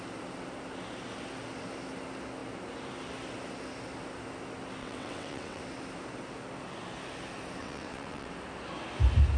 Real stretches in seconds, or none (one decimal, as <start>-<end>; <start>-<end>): 0.0-4.8; 5.6-7.6; 8.3-9.4